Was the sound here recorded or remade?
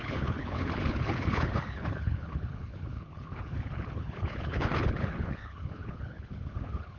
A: remade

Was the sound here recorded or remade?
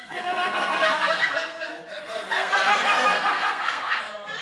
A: remade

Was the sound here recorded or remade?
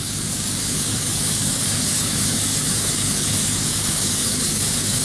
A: remade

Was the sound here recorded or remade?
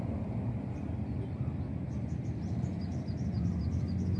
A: recorded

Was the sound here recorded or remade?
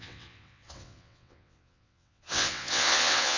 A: remade